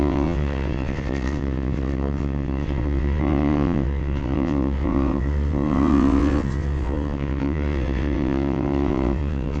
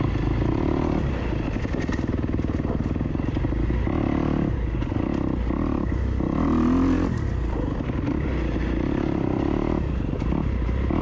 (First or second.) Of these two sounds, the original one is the second